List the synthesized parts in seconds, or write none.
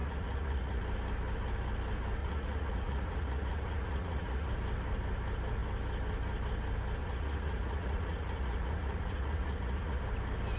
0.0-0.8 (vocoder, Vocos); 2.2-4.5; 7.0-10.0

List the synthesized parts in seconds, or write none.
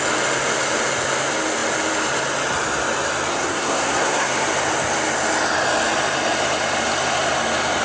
3.3-4.3 (codec, SNAC)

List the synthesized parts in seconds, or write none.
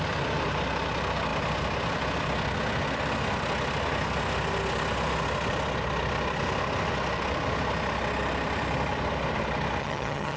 9.8-10.4 (vocoder, HiFi-GAN)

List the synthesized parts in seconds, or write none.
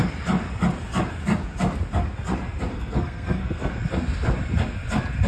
2.7-3.7 (codec, SNAC)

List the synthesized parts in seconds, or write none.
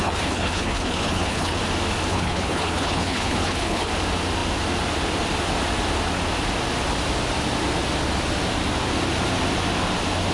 0.0-1.6 (codec, HILCodec); 2.1-3.9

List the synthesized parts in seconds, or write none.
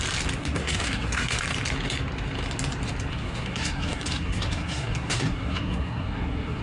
0.4-1.4 (codec, SNAC); 3.1-6.6